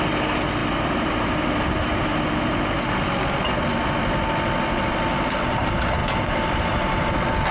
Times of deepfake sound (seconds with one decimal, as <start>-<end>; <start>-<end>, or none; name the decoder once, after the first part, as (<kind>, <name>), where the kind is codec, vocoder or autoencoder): 0.6-2.1 (vocoder, BigVGAN v2); 6.0-7.1